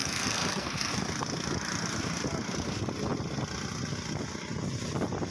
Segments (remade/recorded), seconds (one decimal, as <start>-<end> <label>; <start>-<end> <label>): 0.0-0.9 remade; 0.9-5.3 recorded

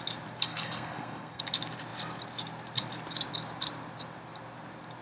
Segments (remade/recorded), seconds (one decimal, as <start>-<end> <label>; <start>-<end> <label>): 0.0-0.5 recorded; 0.5-1.4 remade; 1.4-5.0 recorded

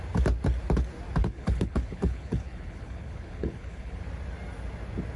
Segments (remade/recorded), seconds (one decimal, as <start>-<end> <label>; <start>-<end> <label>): 0.0-1.2 recorded; 1.2-4.0 remade; 4.0-5.2 recorded